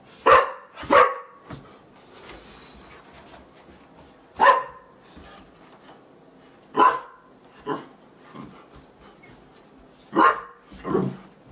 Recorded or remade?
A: recorded